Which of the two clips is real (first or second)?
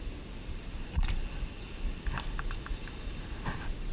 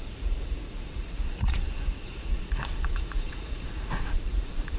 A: first